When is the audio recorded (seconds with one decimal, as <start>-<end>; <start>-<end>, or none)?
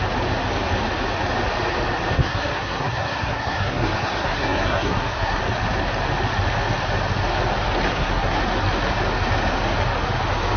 0.0-2.2; 5.4-7.9; 8.4-10.6